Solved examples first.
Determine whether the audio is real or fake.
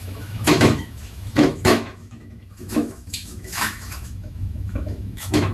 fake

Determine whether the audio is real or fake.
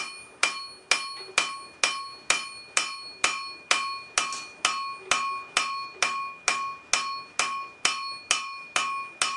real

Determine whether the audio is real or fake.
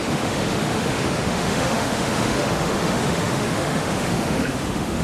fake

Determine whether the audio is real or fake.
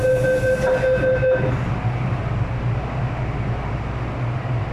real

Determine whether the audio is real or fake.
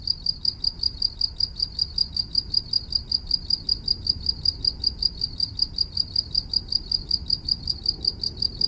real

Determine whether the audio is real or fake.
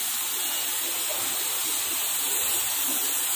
real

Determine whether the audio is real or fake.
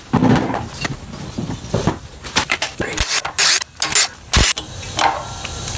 real